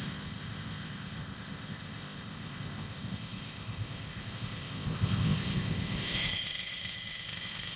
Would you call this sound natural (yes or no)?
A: no